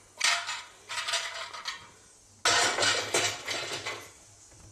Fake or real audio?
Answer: real